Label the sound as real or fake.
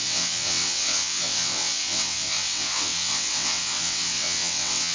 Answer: fake